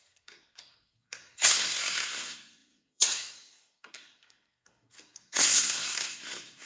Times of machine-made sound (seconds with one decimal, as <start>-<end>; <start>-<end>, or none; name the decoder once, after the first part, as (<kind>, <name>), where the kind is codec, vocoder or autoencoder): 0.0-6.7 (codec, SNAC)